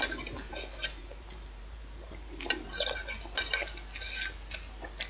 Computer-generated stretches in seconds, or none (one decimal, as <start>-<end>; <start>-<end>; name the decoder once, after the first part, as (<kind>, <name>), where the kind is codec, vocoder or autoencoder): 1.0-2.7 (vocoder, BigVGAN v2)